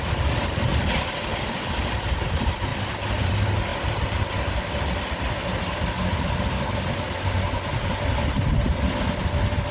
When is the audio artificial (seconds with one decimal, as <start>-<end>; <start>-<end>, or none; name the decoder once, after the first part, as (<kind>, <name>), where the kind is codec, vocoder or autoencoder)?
2.7-3.3 (vocoder, BigVGAN v2)